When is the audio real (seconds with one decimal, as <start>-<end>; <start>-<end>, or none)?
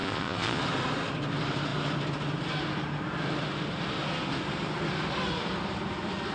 0.6-6.3